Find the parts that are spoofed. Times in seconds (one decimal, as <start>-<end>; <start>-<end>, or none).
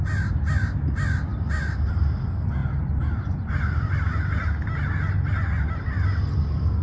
2.6-4.2